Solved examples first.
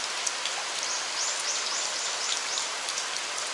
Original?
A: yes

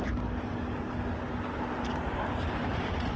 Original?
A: yes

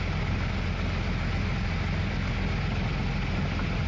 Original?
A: yes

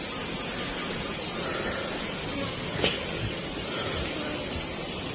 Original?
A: yes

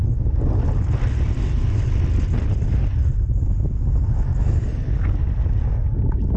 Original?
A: yes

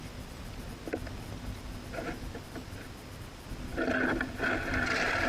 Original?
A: yes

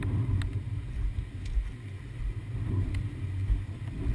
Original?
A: yes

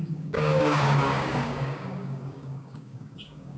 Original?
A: no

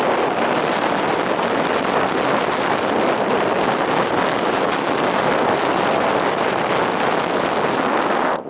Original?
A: yes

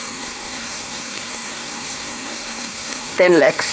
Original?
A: no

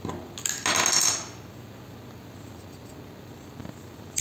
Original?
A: yes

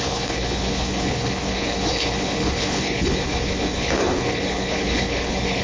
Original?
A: no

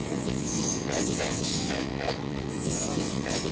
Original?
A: no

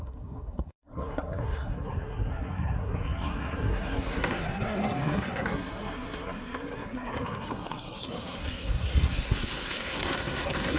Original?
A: no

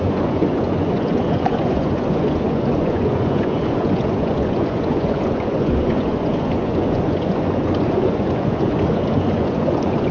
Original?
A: no